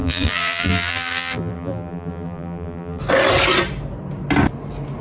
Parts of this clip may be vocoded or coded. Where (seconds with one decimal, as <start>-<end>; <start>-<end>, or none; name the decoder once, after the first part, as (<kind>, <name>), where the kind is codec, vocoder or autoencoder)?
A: 0.0-3.0 (vocoder, BigVGAN v2)